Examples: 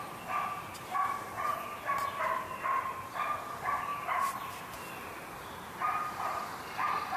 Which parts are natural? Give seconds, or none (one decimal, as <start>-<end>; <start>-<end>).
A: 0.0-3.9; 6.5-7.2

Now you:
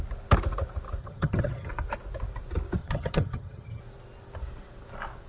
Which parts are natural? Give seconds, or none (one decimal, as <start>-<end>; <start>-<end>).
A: 0.0-1.0; 1.7-2.8; 3.8-5.3

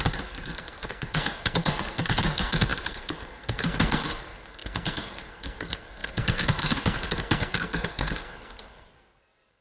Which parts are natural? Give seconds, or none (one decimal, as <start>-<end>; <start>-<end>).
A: none